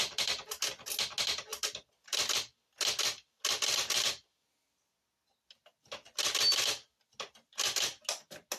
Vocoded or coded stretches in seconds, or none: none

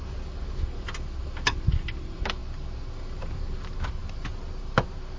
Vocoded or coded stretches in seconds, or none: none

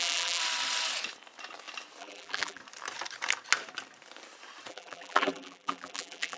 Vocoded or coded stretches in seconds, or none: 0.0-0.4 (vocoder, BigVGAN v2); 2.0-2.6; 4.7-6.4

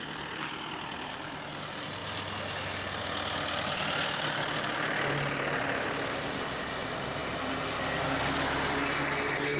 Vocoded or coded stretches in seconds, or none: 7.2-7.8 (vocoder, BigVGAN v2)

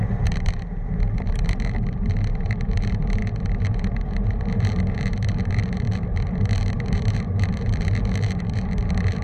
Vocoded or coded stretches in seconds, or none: 0.0-9.2 (vocoder, BigVGAN v2)

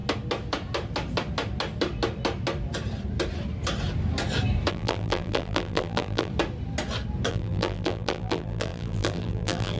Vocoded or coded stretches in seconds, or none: 4.7-6.3 (vocoder, BigVGAN v2); 7.3-9.8

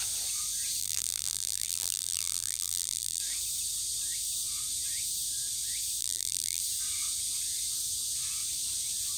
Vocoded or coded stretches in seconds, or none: 0.8-3.2 (vocoder, BigVGAN v2); 6.0-6.6